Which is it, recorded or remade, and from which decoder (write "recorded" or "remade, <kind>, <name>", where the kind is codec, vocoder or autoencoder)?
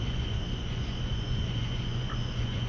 remade, vocoder, Vocos